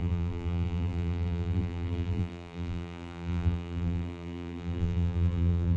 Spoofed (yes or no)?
yes